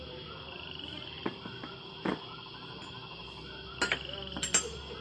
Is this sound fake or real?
real